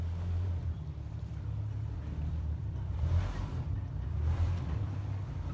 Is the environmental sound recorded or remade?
remade